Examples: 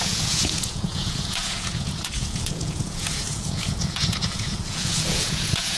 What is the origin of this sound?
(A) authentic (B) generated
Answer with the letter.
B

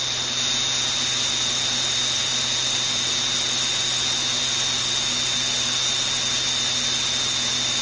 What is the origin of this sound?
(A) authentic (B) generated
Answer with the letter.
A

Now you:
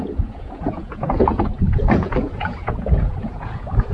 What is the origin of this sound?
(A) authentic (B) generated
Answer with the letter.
B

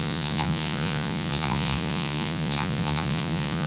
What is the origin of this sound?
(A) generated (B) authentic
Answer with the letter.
A